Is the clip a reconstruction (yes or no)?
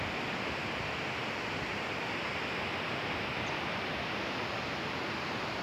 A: no